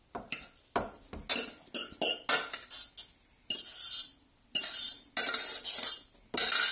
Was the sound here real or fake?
real